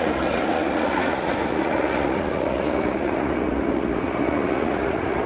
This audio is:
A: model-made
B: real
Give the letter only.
A